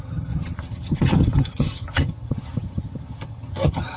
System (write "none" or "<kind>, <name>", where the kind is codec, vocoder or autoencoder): vocoder, HiFi-GAN